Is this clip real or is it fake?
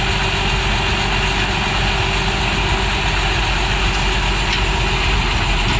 real